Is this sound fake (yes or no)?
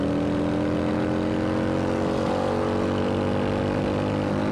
no